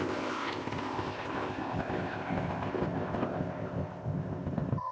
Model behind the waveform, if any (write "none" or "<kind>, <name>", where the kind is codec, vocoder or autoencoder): codec, ZipCodec